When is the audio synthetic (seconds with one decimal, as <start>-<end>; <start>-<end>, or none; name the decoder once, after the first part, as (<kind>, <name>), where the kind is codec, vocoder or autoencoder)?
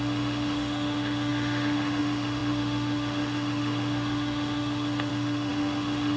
0.0-6.2 (autoencoder, DAC-VAE)